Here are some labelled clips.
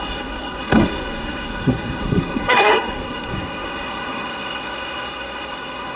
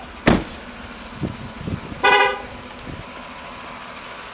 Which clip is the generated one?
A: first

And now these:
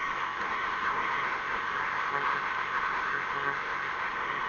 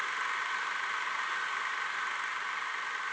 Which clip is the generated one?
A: first